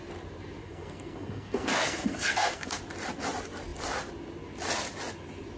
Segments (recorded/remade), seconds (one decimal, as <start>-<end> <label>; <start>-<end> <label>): 0.0-0.6 recorded; 0.6-2.8 remade; 2.8-5.6 recorded